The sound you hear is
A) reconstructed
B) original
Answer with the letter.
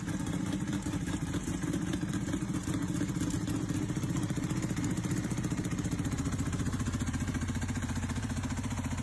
A